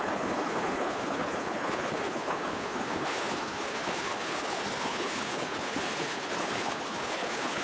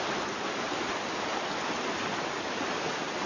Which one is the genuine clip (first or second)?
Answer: second